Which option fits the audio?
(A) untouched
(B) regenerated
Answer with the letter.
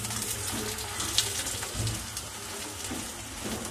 A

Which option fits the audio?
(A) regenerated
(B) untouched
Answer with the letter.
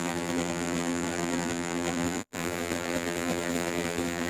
A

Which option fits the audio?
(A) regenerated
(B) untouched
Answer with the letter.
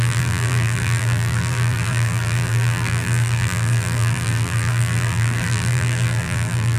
A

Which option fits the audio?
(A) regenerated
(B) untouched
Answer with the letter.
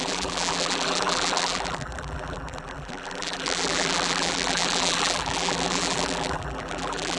A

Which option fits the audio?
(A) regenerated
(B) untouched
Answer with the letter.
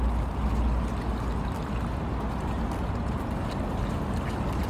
B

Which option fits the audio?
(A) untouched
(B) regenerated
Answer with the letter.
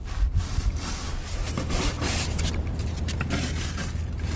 A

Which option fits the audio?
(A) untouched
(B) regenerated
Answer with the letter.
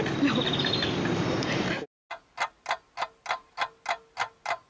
A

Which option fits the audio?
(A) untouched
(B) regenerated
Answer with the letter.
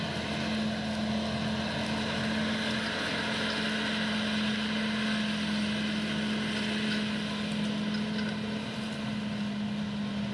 A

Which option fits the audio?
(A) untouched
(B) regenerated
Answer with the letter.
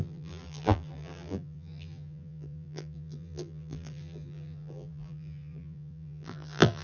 B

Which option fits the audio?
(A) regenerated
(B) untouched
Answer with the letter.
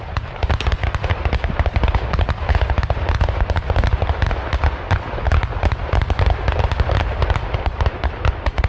B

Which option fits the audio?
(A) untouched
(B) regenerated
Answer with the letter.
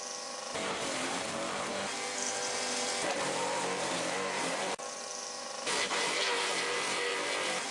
B